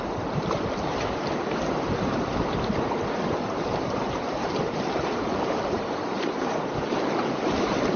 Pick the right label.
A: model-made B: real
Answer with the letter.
A